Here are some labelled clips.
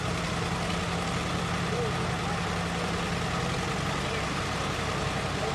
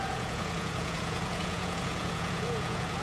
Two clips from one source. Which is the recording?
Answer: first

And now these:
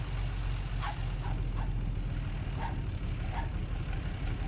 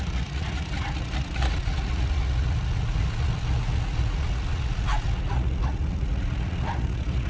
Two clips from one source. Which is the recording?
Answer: first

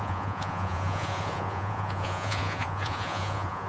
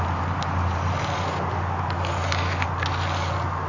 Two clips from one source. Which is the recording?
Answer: second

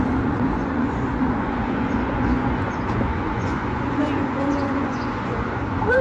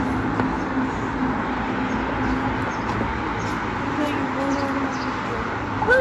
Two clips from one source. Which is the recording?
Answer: second